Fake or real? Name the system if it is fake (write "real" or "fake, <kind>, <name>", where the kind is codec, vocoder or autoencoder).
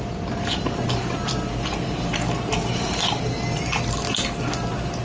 real